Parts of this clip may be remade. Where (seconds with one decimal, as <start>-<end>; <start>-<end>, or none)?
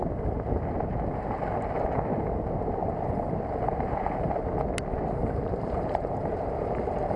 0.0-0.6; 2.8-4.5; 5.2-7.2